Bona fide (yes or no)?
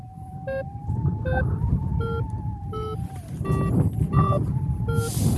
yes